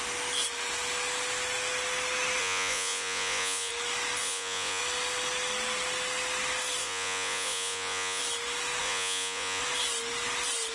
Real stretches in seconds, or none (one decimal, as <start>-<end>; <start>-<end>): 0.0-2.4; 3.7-4.2; 4.8-6.8; 8.2-8.8; 9.6-10.7